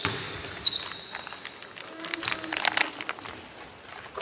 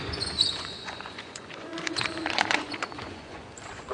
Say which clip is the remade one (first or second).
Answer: second